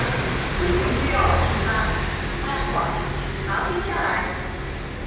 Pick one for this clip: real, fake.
real